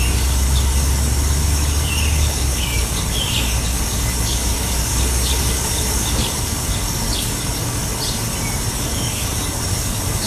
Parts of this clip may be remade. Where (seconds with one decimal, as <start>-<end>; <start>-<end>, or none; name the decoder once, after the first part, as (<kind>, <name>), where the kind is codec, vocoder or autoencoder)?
0.0-7.8 (codec, DAC); 8.7-10.3